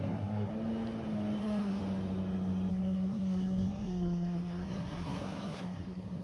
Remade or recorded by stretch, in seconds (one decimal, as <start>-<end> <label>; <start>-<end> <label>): 0.0-0.5 remade; 0.5-1.4 recorded; 1.4-1.8 remade; 1.8-2.7 recorded; 2.7-6.2 remade